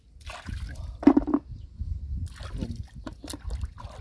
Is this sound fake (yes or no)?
no